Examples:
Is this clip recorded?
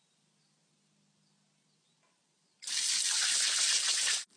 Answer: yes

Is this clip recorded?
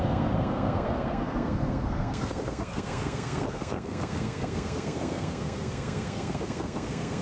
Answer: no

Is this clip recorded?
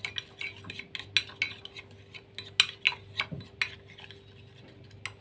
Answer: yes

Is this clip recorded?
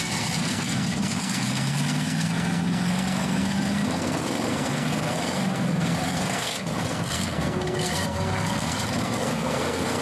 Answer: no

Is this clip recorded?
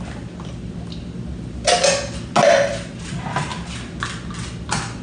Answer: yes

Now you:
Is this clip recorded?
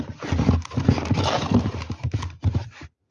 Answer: yes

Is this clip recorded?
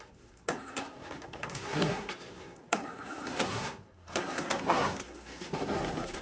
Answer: no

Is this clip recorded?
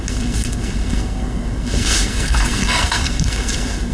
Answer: no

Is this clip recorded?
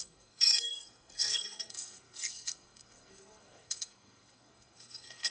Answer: no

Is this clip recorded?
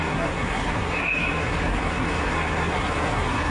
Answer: no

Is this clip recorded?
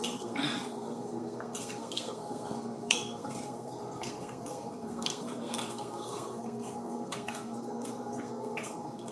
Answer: no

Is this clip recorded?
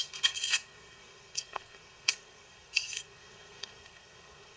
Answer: no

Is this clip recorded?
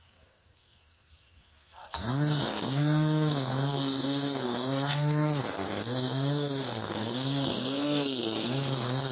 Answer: no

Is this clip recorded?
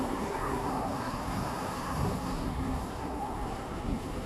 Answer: no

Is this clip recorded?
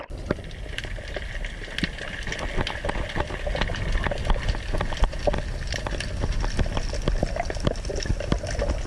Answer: yes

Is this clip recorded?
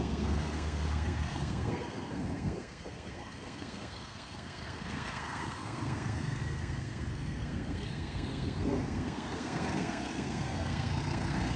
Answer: no